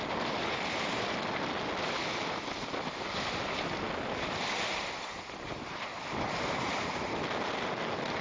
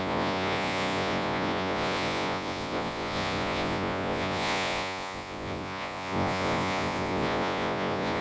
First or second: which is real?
first